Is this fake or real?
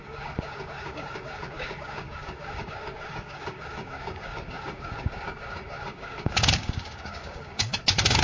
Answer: fake